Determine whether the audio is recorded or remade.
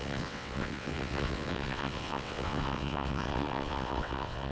remade